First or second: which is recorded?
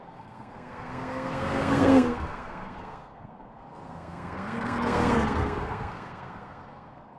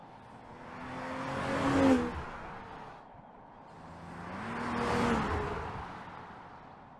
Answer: second